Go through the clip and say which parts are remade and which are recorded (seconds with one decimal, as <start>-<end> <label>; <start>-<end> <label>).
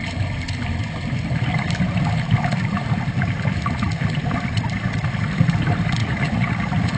0.0-6.0 recorded; 6.0-7.0 remade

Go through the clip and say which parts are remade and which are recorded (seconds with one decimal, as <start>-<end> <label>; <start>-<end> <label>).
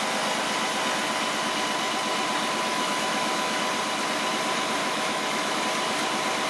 0.0-2.7 recorded; 2.7-3.6 remade; 3.6-4.8 recorded; 4.8-5.6 remade; 5.6-6.5 recorded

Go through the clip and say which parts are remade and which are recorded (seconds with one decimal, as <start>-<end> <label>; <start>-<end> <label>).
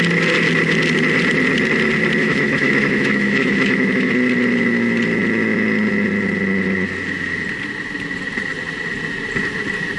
0.0-2.2 recorded; 2.2-4.1 remade; 4.1-10.0 recorded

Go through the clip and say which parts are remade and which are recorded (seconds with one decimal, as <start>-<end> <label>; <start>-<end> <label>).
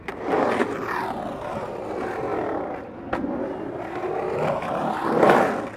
0.0-5.8 recorded